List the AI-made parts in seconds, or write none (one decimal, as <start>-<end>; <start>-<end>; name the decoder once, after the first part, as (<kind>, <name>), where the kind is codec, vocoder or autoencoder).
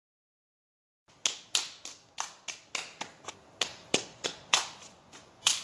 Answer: 3.7-5.6 (vocoder, Vocos)